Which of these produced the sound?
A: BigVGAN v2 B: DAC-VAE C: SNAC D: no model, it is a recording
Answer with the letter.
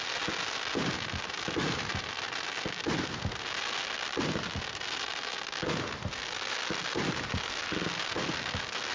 D